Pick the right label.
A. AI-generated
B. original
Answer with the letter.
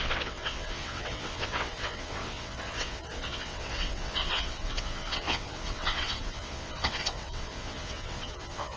A